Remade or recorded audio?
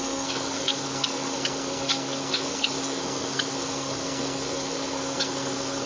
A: remade